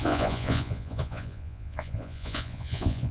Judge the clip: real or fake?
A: fake